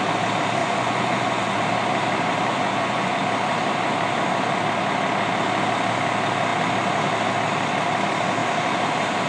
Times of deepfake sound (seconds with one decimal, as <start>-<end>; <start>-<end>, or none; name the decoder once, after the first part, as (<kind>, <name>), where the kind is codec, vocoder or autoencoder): 0.6-1.6 (vocoder, Vocos); 2.5-3.2